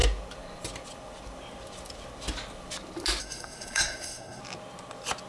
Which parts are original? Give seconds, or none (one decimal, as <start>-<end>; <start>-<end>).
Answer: 0.0-3.2; 4.4-5.3